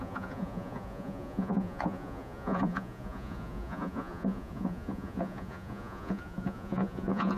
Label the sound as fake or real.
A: fake